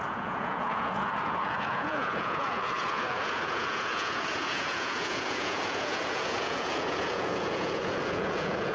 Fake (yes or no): yes